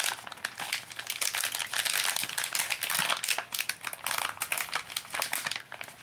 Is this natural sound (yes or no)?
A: yes